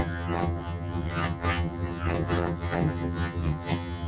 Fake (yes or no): yes